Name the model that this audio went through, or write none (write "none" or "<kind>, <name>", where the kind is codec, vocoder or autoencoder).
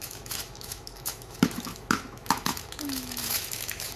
autoencoder, DAC-VAE